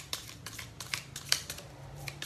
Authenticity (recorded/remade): remade